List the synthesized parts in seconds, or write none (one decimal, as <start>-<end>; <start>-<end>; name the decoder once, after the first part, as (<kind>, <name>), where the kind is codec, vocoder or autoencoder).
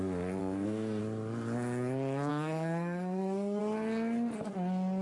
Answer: 0.4-1.0 (codec, SNAC); 2.3-3.6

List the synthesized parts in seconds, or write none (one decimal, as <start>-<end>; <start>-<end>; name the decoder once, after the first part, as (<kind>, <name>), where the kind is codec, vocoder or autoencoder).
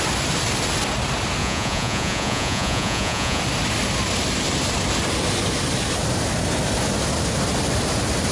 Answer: 1.4-3.4 (vocoder, Vocos)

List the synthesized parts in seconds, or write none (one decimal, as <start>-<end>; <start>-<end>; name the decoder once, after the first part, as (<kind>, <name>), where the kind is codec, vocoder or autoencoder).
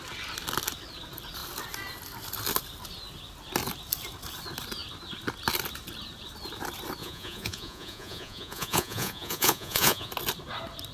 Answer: 7.0-10.1 (vocoder, Vocos)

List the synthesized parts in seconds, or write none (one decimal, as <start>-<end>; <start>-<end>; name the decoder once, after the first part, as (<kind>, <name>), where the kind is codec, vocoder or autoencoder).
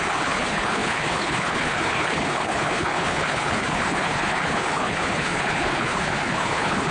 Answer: 0.0-6.9 (codec, HILCodec)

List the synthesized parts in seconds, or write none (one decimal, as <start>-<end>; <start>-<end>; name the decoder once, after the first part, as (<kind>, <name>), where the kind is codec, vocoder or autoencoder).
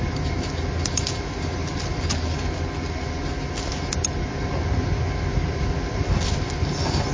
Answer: none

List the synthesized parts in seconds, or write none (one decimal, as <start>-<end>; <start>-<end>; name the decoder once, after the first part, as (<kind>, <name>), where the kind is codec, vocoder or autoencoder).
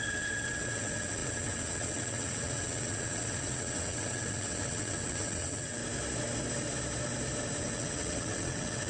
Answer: 0.0-5.8 (vocoder, WaveNeXt); 7.6-8.9